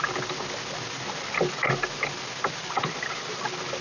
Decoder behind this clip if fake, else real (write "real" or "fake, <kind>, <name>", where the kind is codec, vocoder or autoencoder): real